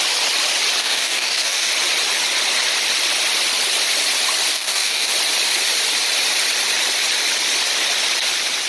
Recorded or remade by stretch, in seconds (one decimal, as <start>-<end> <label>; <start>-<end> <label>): 0.0-0.8 recorded; 0.8-1.7 remade; 1.7-4.5 recorded; 4.5-5.1 remade; 5.1-8.7 recorded